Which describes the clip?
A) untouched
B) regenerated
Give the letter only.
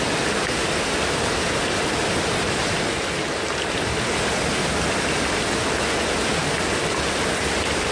A